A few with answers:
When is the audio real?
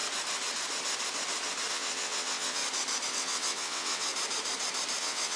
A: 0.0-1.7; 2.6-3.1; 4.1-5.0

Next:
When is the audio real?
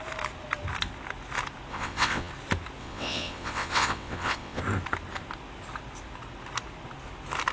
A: 0.0-1.7; 2.3-2.8; 4.6-7.5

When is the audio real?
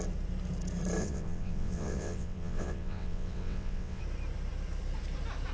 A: 0.0-1.0; 4.0-5.5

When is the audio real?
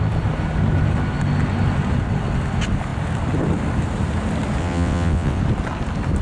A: 0.0-4.6; 5.4-6.2